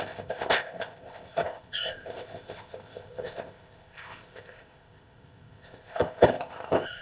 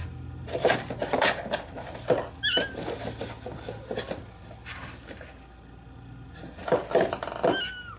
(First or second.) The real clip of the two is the second